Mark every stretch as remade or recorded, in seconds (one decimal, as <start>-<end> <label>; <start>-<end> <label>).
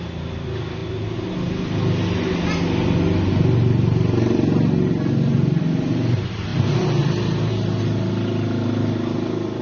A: 0.0-9.6 recorded